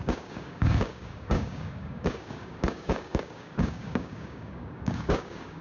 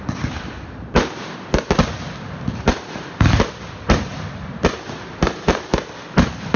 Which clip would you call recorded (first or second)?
second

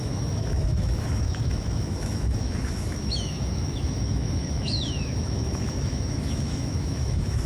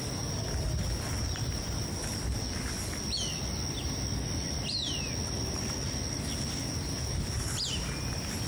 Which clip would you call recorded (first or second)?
second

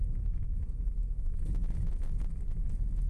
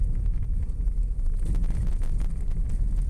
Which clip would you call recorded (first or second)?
first